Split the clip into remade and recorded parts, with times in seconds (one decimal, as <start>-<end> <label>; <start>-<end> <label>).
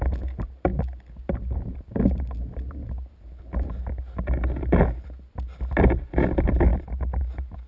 0.0-7.7 recorded